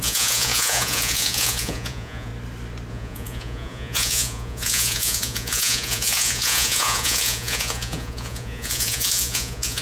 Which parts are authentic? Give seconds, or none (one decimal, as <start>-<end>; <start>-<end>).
2.3-2.9